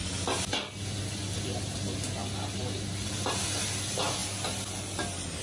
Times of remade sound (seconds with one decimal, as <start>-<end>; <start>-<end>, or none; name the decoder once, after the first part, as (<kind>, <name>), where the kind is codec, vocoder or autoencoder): none